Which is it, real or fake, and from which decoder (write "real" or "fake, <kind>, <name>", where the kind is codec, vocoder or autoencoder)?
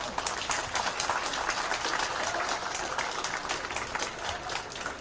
real